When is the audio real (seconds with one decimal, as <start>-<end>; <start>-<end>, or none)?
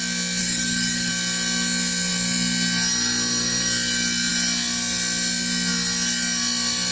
0.0-0.4; 1.1-6.9